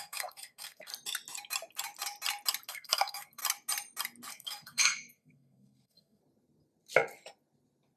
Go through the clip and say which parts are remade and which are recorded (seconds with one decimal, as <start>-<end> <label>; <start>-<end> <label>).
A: 0.0-0.9 remade; 0.9-2.7 recorded; 2.7-3.4 remade; 3.4-4.3 recorded; 4.3-6.2 remade; 6.2-8.0 recorded